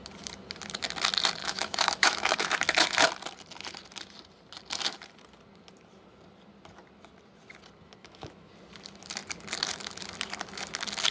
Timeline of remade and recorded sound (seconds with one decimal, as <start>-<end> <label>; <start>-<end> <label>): 0.0-1.4 recorded; 1.4-3.1 remade; 3.1-8.0 recorded; 8.0-8.5 remade; 8.5-11.1 recorded